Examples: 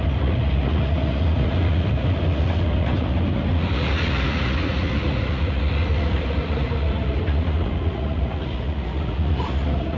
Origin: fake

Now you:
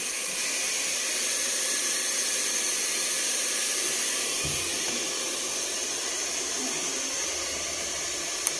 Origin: fake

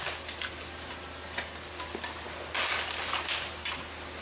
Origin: real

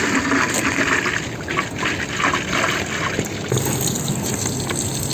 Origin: real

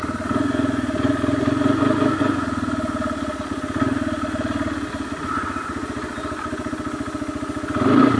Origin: real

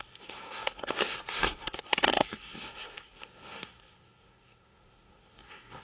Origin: fake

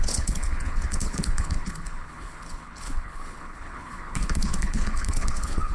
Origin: fake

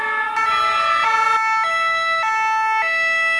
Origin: real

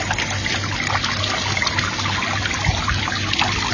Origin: real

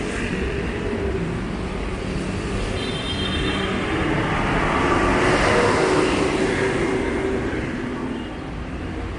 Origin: real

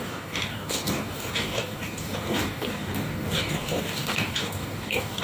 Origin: fake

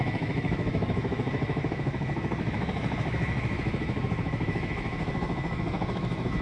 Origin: fake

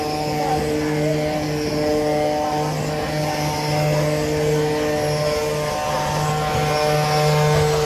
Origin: real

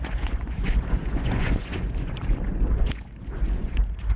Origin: fake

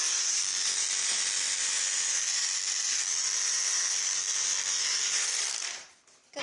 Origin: fake